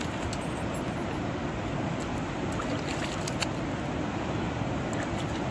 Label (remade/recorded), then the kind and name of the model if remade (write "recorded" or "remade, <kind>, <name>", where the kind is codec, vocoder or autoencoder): recorded